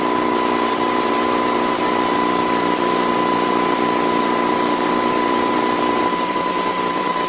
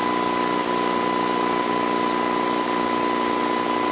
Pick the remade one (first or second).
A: first